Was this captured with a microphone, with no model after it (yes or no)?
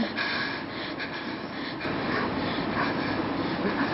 yes